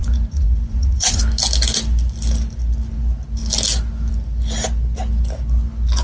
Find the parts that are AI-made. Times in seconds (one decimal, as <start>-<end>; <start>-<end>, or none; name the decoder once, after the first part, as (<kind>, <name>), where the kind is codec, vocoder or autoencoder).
0.0-1.2 (vocoder, Vocos)